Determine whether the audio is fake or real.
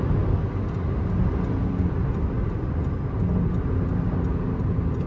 real